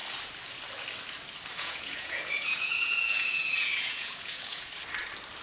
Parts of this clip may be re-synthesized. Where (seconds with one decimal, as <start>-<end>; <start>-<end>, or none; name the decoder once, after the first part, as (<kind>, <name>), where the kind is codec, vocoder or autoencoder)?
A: 1.5-4.7 (vocoder, Vocos)